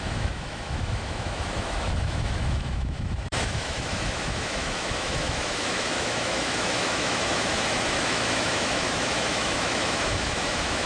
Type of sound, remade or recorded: remade